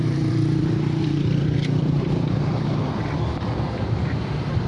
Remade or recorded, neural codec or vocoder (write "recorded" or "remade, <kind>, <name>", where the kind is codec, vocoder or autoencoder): remade, vocoder, BigVGAN v2